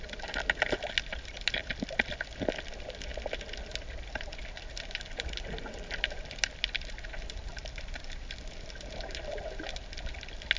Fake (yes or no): no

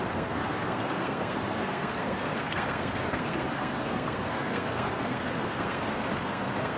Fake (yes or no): yes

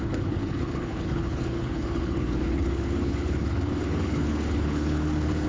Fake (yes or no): yes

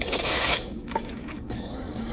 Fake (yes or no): yes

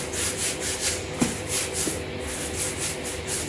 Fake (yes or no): no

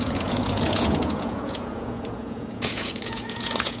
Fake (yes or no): yes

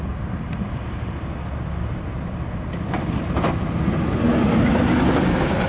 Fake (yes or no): no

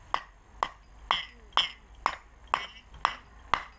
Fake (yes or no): no